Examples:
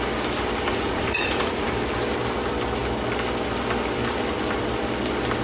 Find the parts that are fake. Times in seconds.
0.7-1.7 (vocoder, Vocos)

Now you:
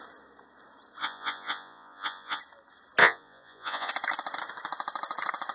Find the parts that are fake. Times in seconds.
1.0-2.4 (vocoder, Vocos); 3.0-3.9

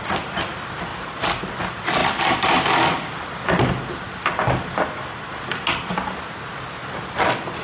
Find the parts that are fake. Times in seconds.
none

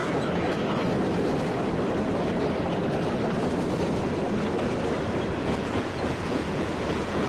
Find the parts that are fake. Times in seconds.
5.4-7.3 (vocoder, Vocos)

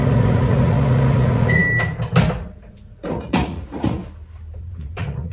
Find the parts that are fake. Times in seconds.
0.0-1.6 (vocoder, Vocos); 2.7-4.0; 4.6-5.3